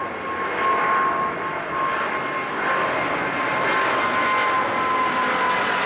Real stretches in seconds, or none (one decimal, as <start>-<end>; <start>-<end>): 0.0-5.9